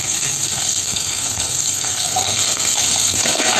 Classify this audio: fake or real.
fake